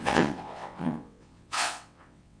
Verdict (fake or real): fake